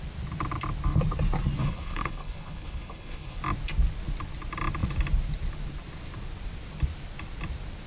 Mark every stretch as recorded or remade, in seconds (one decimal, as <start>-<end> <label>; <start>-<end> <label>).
0.0-1.6 recorded; 1.6-3.4 remade; 3.4-7.9 recorded

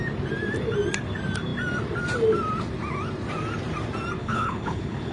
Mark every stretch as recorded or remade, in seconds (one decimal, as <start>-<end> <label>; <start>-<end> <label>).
0.0-4.2 recorded; 4.2-5.1 remade